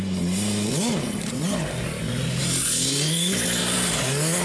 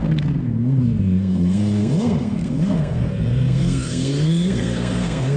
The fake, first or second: second